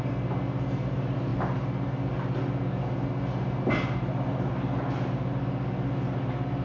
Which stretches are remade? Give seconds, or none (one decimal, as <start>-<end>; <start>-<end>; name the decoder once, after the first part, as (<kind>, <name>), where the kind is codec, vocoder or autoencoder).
none